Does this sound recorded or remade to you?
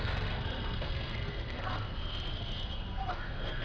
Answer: remade